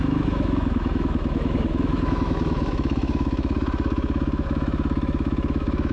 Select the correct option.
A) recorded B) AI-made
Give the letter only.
B